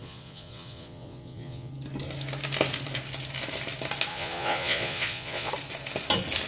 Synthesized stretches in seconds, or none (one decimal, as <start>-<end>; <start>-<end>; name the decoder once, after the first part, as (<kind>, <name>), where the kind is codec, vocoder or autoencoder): 0.0-1.7 (vocoder, Vocos); 4.1-5.5

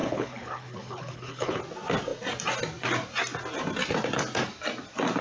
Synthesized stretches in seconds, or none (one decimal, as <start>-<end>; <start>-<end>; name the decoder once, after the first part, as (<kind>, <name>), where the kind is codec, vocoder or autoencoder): 0.0-1.6 (codec, HILCodec)

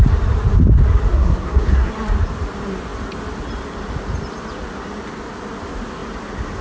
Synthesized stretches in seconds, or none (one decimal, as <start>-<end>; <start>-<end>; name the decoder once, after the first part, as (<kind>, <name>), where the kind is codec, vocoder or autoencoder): 1.1-1.9 (codec, SNAC)

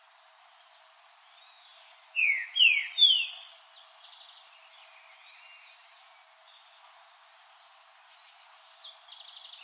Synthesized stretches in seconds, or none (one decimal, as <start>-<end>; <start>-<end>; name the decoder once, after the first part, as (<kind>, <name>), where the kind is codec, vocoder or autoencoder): none